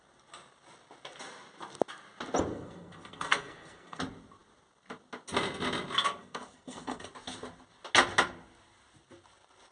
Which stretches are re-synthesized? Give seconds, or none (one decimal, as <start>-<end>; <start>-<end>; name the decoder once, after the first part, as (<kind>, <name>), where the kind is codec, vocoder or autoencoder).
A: 2.5-4.0 (codec, SNAC); 6.2-7.1